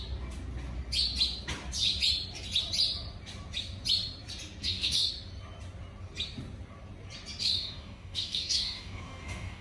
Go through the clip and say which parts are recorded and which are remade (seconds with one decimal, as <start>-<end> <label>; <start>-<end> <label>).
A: 0.0-4.6 recorded; 4.6-5.1 remade; 5.1-7.4 recorded; 7.4-9.6 remade